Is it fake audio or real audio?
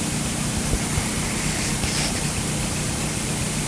fake